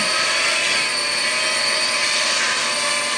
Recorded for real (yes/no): yes